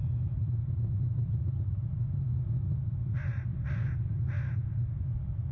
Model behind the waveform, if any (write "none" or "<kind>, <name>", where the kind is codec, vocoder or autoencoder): none